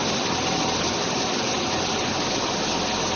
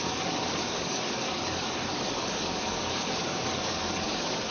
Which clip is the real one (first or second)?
first